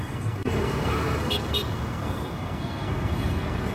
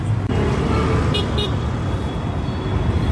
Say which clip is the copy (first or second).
first